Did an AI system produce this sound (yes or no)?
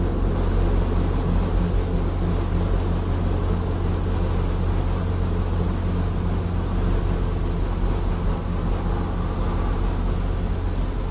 no